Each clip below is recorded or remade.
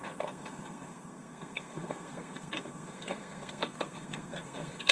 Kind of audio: remade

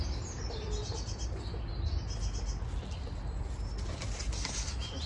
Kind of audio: recorded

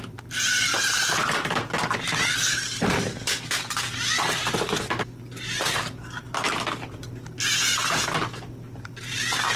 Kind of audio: recorded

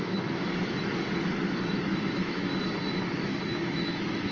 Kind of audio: remade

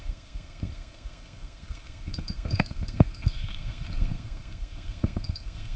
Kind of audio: remade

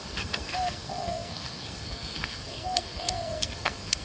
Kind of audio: remade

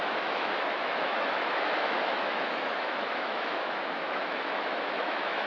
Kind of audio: remade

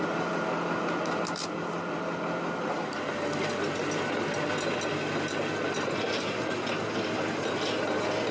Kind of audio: recorded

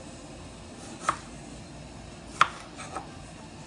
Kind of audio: recorded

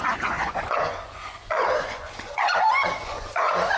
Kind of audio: remade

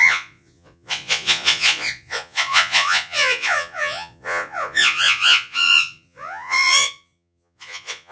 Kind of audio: remade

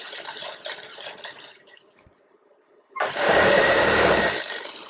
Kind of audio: remade